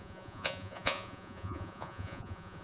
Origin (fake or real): fake